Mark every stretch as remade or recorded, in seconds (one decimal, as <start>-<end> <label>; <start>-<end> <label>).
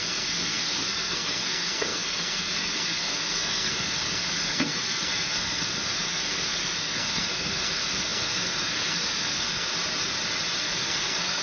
0.0-9.7 remade; 9.7-10.6 recorded; 10.6-11.4 remade